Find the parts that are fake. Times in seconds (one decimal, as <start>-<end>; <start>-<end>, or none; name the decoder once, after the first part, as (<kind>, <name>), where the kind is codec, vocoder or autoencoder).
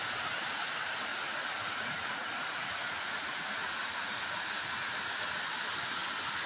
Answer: 1.1-4.4 (vocoder, Vocos)